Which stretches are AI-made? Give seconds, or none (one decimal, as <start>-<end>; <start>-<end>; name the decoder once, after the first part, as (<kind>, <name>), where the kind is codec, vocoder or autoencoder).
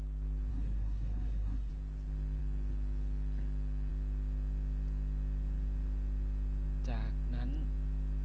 0.5-1.7 (codec, SNAC)